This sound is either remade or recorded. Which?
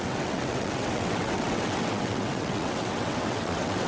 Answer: remade